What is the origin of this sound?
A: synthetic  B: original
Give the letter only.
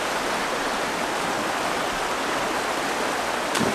B